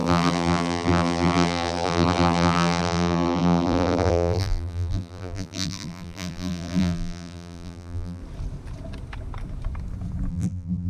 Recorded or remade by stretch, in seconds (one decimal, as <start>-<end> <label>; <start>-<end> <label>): 0.0-8.2 remade; 8.2-10.3 recorded; 10.3-10.9 remade